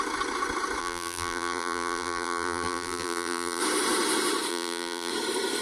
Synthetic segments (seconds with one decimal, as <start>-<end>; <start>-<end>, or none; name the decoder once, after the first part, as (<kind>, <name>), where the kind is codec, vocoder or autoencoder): 0.8-3.6 (vocoder, BigVGAN v2); 4.5-5.1